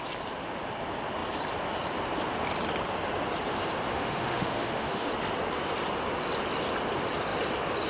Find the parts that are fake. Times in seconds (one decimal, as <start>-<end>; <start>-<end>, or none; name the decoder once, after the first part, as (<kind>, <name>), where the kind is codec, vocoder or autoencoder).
3.9-5.1 (autoencoder, DAC-VAE)